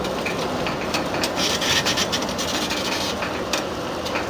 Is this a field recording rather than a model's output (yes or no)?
no